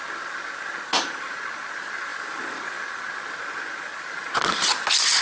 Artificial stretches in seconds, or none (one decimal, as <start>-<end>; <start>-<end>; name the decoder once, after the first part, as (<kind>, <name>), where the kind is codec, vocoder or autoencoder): 2.1-3.0 (vocoder, BigVGAN v2)